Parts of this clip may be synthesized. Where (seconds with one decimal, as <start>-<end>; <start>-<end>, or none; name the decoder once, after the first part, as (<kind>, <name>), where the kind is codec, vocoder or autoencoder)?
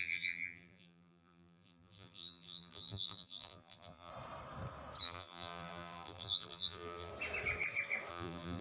0.0-4.1 (vocoder, BigVGAN v2); 5.0-7.1; 8.1-8.6